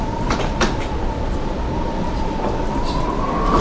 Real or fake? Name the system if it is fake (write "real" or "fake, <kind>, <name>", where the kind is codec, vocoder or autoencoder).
real